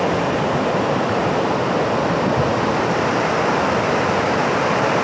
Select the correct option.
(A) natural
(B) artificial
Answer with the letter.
A